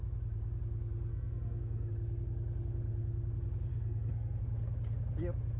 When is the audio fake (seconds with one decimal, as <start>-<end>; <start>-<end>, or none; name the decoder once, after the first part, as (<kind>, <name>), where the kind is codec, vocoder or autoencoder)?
1.1-1.9 (codec, SNAC); 3.7-4.4